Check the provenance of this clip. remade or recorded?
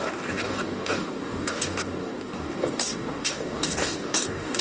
remade